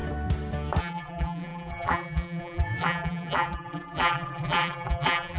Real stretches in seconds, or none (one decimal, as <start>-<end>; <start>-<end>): 0.0-0.8